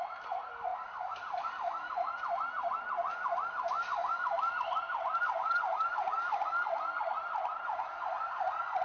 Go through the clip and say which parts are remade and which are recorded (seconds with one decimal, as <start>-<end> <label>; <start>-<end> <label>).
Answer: 0.0-8.8 recorded